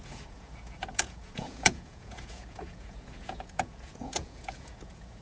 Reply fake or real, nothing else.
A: fake